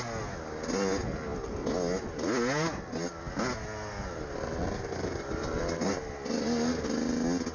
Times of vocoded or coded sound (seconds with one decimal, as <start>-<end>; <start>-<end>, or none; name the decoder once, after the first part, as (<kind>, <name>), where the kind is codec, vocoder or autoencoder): none